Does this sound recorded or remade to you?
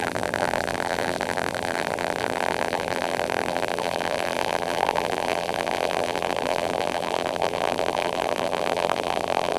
remade